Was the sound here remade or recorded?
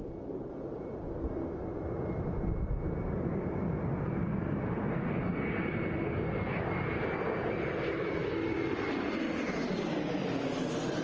recorded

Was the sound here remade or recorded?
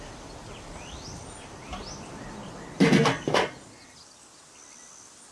recorded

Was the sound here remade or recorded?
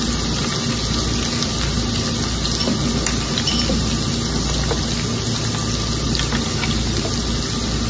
recorded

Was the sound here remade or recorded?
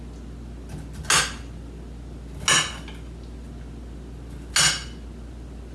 recorded